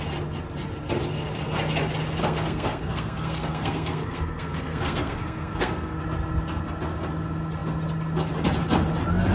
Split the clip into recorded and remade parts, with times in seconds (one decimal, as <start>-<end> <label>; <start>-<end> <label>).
0.0-2.2 recorded; 2.2-6.0 remade; 6.0-9.3 recorded